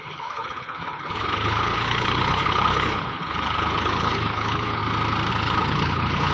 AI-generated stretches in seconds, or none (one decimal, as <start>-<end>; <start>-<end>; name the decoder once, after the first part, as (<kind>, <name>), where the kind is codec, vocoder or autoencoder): 0.0-4.8 (codec, HILCodec); 5.3-6.3